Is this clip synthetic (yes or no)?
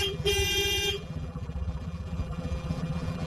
yes